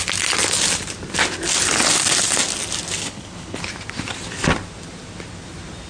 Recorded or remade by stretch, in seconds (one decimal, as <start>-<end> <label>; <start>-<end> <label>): 0.0-3.0 recorded; 3.0-3.6 remade; 3.6-5.9 recorded